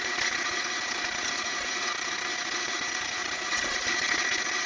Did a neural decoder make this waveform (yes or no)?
yes